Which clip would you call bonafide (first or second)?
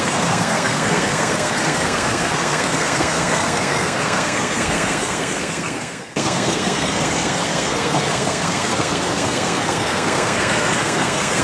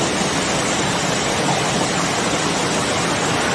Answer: second